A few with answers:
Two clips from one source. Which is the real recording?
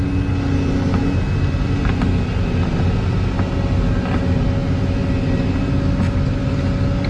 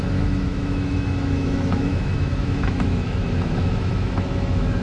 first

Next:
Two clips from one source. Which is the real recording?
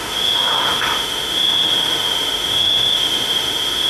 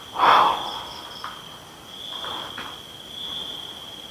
second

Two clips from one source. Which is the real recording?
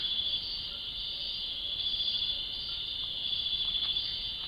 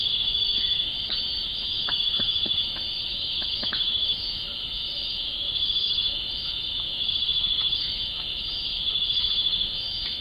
first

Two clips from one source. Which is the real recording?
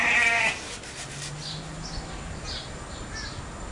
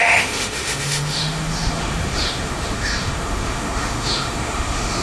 first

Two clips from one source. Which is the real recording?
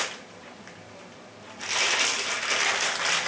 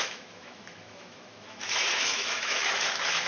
first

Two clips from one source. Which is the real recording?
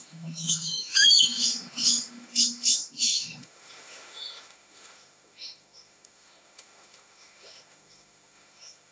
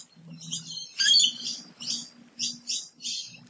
second